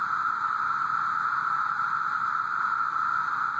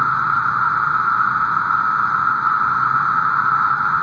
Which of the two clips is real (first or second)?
first